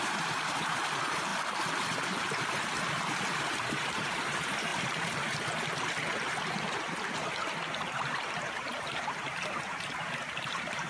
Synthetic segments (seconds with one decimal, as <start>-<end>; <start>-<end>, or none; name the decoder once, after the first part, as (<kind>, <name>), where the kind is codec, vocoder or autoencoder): 0.0-1.3 (vocoder, BigVGAN v2); 2.9-4.7; 8.0-10.9